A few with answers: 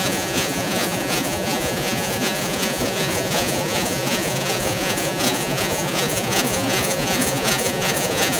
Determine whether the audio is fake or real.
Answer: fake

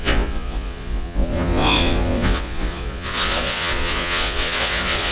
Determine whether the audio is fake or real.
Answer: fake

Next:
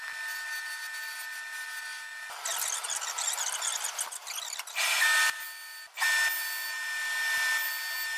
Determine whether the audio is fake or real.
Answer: real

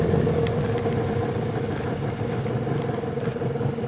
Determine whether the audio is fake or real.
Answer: real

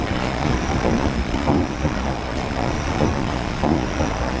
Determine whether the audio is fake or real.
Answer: fake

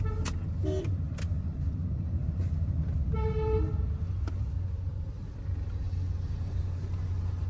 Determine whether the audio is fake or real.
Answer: real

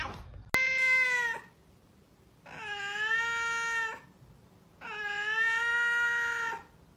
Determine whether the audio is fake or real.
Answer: real